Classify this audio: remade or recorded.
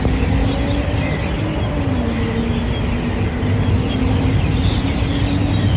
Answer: recorded